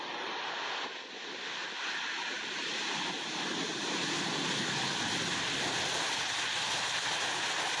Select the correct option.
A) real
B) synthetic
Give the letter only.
A